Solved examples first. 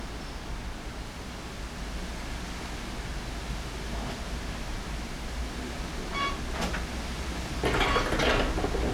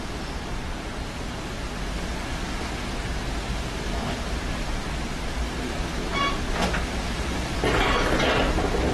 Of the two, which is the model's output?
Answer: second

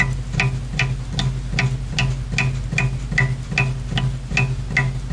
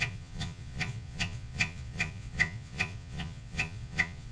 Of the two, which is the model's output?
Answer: second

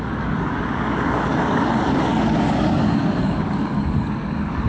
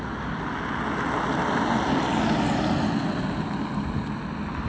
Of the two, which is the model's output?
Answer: first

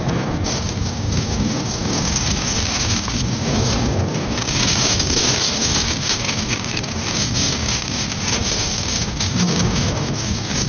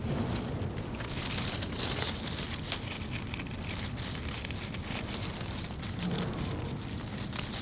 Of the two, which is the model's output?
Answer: first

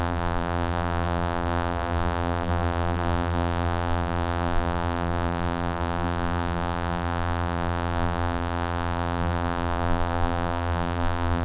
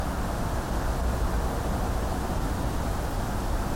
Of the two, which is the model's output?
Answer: first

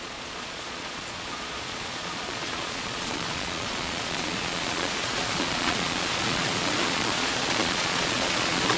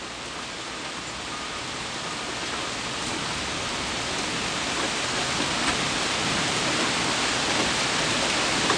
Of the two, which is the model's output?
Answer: first